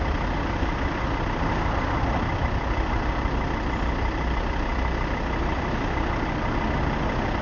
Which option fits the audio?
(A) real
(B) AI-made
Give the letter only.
A